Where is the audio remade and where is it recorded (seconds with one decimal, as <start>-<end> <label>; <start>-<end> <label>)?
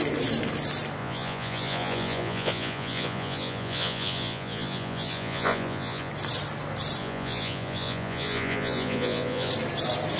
0.0-1.0 recorded; 1.0-6.1 remade; 6.1-7.0 recorded; 7.0-9.5 remade; 9.5-10.2 recorded